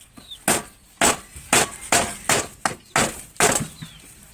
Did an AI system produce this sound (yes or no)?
no